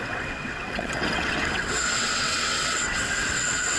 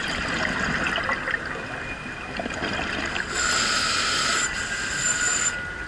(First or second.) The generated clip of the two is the first